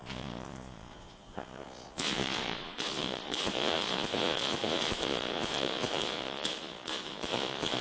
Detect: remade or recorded remade